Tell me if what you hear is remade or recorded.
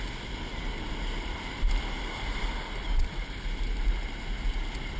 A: recorded